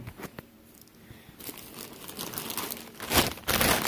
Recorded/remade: recorded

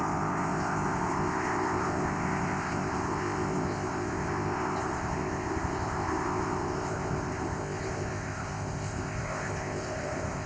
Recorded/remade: remade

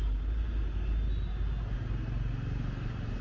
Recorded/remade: recorded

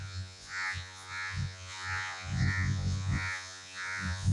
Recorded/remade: remade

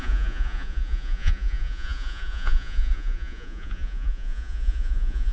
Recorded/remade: remade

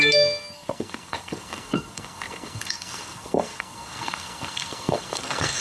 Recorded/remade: remade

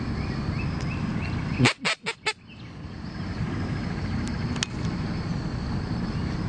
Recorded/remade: recorded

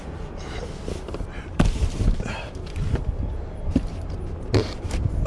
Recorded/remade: remade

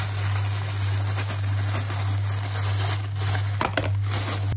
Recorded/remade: recorded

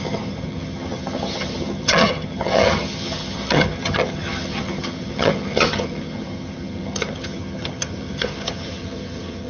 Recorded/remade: remade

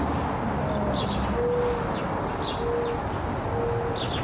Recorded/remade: recorded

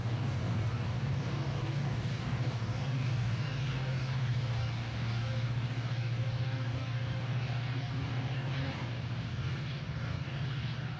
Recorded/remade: remade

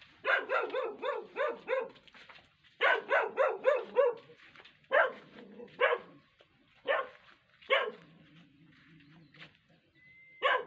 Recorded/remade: recorded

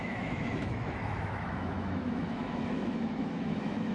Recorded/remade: remade